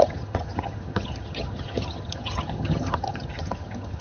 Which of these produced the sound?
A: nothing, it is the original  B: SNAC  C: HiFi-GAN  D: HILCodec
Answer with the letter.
C